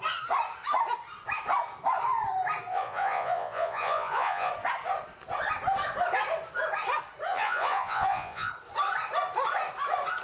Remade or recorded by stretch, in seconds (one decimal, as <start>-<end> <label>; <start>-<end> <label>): 0.0-2.7 recorded; 2.7-4.5 remade; 4.5-7.3 recorded; 7.3-8.5 remade; 8.5-10.2 recorded